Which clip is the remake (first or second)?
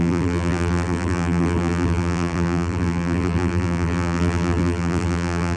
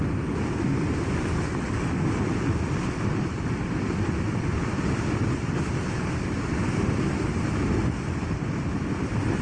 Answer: first